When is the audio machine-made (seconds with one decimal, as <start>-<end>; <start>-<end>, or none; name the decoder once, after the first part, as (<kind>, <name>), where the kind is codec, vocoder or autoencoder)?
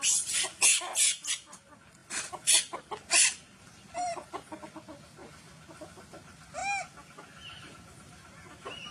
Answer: 2.0-4.6 (vocoder, BigVGAN v2)